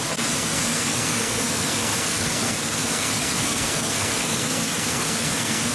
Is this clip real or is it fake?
fake